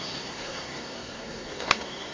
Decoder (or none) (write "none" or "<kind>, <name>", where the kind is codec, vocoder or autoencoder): codec, SNAC